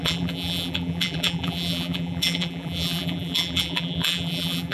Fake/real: fake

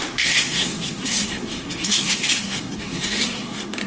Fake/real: fake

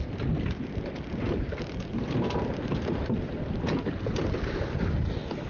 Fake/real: real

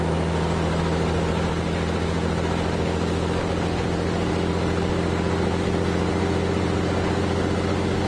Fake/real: real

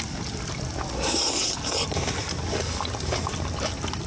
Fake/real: real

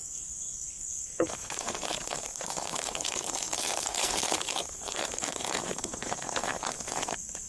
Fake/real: fake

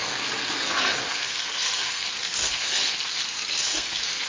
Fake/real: fake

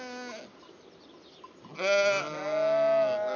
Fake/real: real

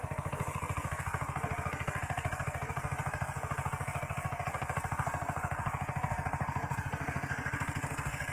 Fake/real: fake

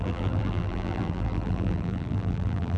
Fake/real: fake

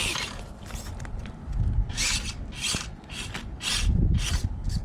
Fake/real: real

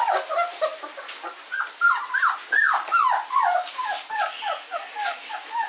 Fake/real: real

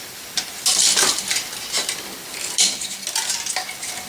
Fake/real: real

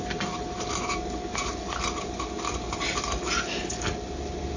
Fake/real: real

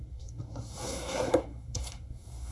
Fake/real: fake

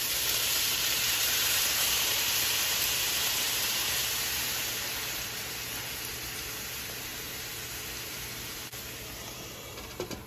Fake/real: fake